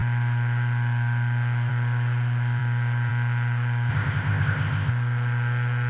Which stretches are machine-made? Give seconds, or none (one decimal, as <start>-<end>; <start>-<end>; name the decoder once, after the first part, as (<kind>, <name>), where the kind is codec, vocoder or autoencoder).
3.9-4.9 (codec, ZipCodec)